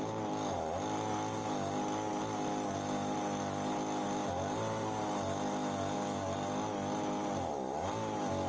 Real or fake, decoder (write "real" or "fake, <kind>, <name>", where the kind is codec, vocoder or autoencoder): real